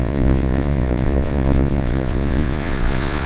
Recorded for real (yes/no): no